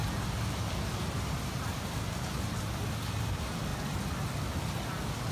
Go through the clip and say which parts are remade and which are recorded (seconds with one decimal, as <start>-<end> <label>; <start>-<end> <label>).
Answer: 0.0-5.3 recorded